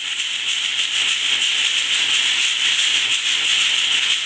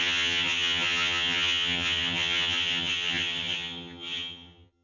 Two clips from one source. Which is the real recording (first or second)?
first